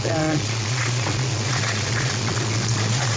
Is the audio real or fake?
fake